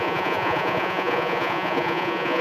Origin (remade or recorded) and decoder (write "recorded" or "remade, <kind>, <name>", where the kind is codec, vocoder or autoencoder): remade, vocoder, Vocos